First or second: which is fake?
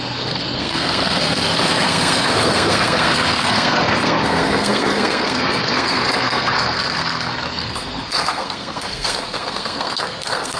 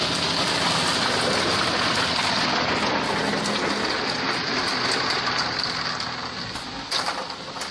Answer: first